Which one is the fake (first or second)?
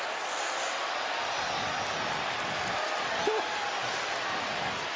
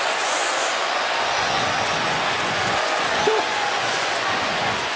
second